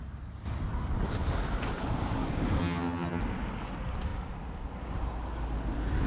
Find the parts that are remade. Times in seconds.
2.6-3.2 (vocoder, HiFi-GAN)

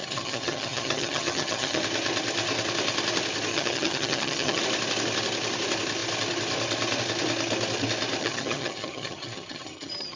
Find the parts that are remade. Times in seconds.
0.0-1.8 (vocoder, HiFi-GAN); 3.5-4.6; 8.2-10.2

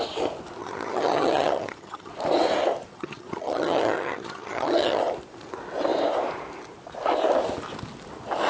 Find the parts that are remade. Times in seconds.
0.6-2.1 (vocoder, HiFi-GAN); 2.9-5.0

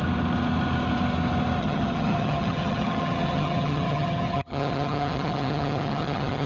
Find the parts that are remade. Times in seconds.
1.6-6.5 (vocoder, HiFi-GAN)

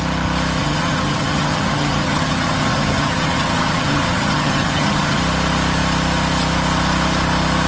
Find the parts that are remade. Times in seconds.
0.6-5.2 (vocoder, HiFi-GAN)

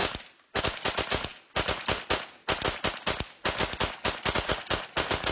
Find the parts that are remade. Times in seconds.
none

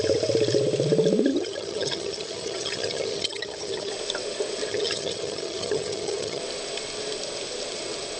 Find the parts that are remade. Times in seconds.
1.3-3.9 (vocoder, HiFi-GAN); 4.7-6.4

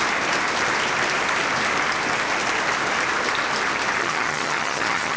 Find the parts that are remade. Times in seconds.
4.0-5.2 (vocoder, HiFi-GAN)